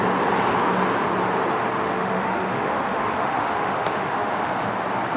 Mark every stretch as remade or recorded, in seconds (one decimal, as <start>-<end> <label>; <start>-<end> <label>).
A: 0.0-1.8 recorded; 1.8-4.7 remade; 4.7-5.2 recorded